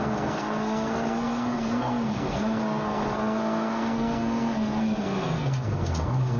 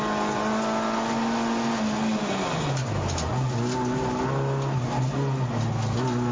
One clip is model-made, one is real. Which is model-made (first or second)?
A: first